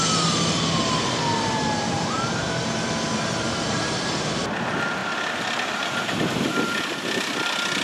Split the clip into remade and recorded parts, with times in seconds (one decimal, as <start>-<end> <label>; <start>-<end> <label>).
0.0-5.0 recorded; 5.0-6.7 remade; 6.7-7.8 recorded